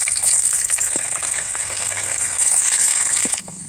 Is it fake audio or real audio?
fake